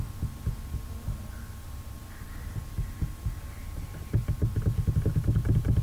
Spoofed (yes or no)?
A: no